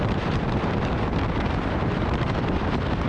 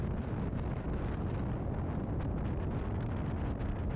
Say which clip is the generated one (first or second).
first